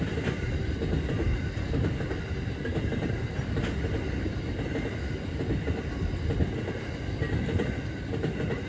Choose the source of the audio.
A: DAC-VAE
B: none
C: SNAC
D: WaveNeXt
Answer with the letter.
B